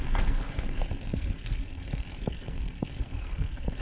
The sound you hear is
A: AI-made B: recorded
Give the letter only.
A